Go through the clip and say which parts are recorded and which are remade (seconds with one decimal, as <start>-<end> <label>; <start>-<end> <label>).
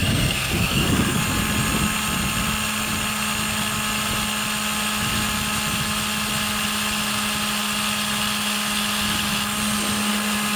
0.0-1.2 remade; 1.2-10.6 recorded